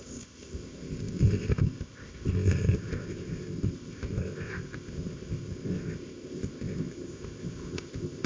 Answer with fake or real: fake